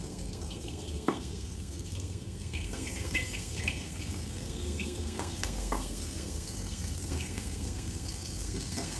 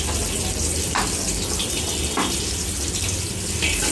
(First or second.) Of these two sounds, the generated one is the first